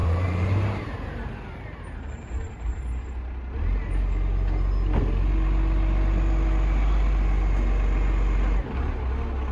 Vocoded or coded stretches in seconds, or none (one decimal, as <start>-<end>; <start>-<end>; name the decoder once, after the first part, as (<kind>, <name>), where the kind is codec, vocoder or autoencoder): 0.0-2.7 (vocoder, BigVGAN v2)